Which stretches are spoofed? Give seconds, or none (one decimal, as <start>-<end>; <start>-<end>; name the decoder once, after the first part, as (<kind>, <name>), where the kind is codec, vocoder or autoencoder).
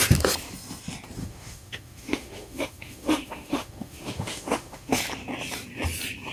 1.2-5.0 (autoencoder, DAC-VAE)